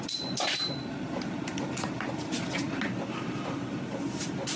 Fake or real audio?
real